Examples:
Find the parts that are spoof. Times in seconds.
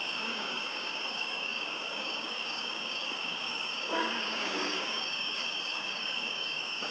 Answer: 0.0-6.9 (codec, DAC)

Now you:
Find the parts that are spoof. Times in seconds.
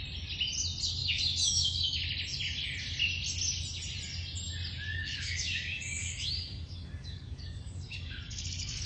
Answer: 1.0-2.0 (codec, DAC); 4.9-8.9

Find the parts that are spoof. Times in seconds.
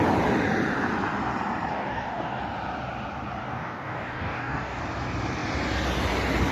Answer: 1.7-2.4 (codec, DAC); 3.4-4.8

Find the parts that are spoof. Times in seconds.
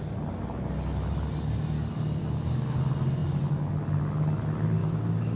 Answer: 2.2-2.8 (codec, DAC); 4.8-5.4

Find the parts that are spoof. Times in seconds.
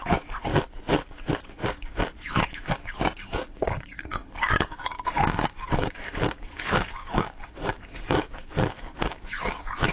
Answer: 0.0-0.5 (codec, DAC); 1.5-9.9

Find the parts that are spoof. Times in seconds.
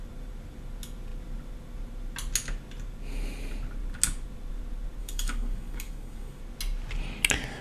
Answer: 5.0-6.4 (codec, DAC)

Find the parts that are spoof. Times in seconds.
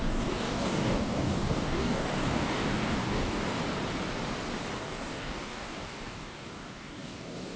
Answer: 0.0-3.6 (codec, DAC); 4.8-7.6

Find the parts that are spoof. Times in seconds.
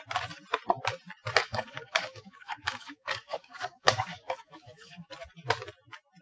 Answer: 1.4-5.1 (codec, DAC)